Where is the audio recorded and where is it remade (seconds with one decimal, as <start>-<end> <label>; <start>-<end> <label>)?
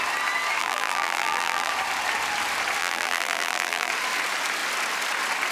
0.0-0.6 recorded; 0.6-1.7 remade; 1.7-2.8 recorded; 2.8-3.9 remade; 3.9-5.5 recorded